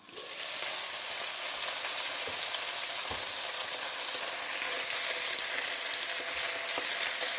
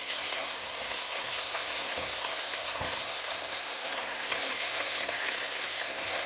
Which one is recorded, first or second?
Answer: first